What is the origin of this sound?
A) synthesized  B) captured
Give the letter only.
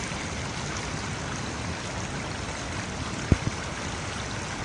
B